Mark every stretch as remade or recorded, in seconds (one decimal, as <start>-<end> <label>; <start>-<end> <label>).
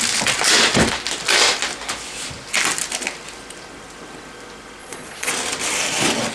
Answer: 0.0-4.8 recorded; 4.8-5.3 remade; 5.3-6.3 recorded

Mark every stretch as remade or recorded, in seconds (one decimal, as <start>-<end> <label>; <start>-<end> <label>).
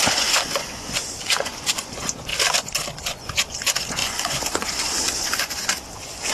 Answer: 0.0-2.3 remade; 2.3-3.0 recorded; 3.0-6.3 remade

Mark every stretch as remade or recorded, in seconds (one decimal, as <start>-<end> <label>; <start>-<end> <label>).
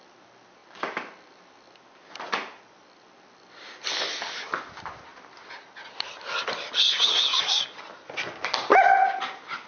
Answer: 0.0-9.7 recorded